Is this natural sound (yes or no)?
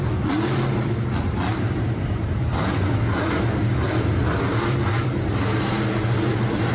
yes